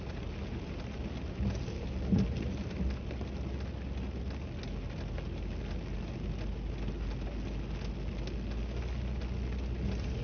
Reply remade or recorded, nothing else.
recorded